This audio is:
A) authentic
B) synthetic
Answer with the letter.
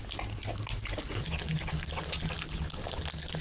A